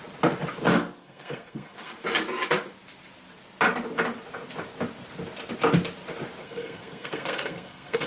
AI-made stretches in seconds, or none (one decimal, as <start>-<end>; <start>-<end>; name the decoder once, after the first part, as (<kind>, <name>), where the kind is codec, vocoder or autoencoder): 1.0-1.9 (codec, SNAC); 6.4-8.1